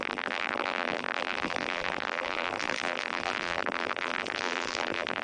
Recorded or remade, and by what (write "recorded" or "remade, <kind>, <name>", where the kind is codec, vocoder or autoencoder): remade, vocoder, BigVGAN v2